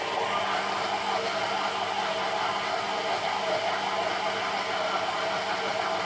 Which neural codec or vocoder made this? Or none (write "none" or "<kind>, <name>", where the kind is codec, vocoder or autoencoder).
none